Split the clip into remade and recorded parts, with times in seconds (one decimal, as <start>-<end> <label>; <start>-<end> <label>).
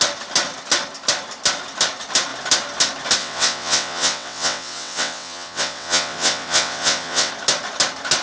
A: 0.0-3.2 recorded; 3.2-7.3 remade; 7.3-8.2 recorded